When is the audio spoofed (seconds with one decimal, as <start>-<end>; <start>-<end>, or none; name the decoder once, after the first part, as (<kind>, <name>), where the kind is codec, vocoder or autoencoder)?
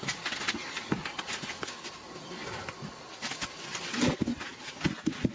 none